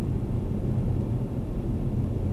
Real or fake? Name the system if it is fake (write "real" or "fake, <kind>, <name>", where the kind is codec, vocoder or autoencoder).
real